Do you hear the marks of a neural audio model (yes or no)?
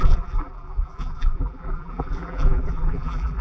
yes